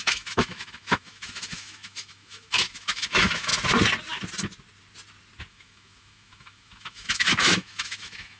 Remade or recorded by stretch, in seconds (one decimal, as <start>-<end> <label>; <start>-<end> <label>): 0.0-3.5 remade; 3.5-5.5 recorded; 5.5-8.4 remade